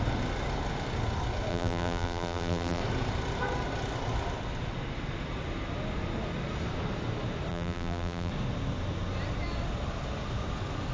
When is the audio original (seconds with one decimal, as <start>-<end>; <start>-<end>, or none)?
0.0-1.5; 2.8-7.5; 8.3-10.9